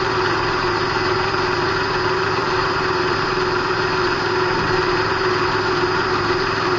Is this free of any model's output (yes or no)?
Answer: no